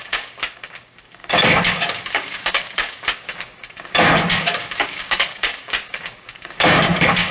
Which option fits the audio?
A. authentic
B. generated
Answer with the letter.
B